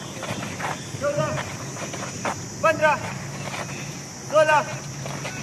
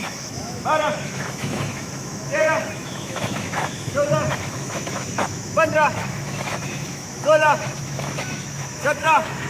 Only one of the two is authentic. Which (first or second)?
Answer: first